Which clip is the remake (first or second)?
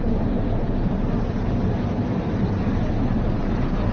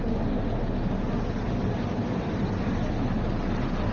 first